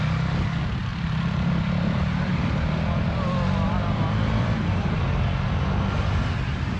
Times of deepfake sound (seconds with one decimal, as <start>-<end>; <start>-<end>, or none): 0.9-5.0